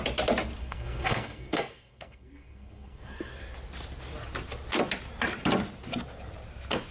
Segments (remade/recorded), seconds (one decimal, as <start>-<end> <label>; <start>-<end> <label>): 0.0-0.6 recorded; 0.6-3.4 remade; 3.4-6.9 recorded